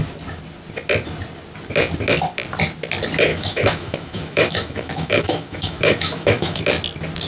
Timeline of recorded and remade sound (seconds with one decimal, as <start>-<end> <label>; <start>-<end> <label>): 0.0-3.3 recorded; 3.3-6.6 remade; 6.6-7.3 recorded